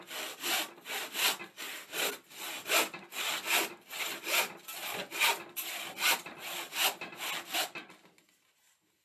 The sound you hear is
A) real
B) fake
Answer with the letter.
A